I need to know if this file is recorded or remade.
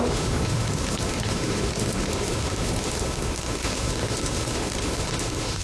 remade